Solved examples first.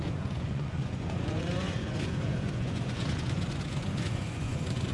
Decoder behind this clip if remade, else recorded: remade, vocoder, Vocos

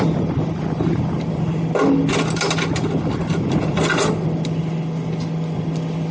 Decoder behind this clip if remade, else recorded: recorded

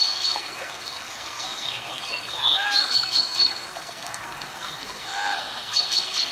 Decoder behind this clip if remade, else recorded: remade, codec, SNAC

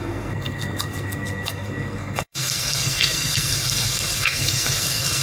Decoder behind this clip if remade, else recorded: remade, codec, SNAC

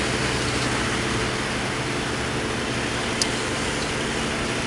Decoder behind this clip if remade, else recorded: recorded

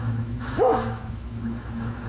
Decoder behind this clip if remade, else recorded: remade, autoencoder, DAC-VAE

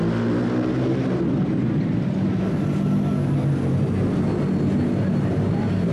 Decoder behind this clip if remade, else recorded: recorded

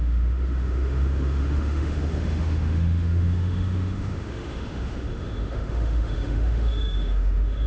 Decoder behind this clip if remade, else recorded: remade, autoencoder, DAC-VAE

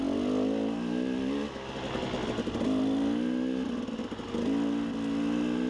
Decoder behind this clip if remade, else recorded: recorded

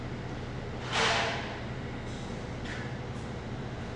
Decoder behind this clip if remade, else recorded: recorded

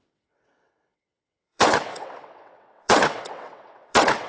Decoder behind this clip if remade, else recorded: remade, vocoder, WaveNeXt